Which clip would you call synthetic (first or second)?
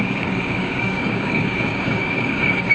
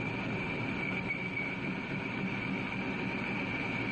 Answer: first